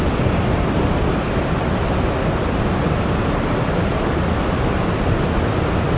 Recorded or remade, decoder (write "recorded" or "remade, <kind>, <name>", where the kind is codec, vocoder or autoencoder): recorded